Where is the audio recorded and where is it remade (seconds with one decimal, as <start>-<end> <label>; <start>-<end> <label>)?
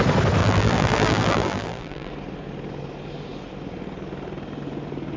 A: 0.0-0.4 recorded; 0.4-2.1 remade; 2.1-5.2 recorded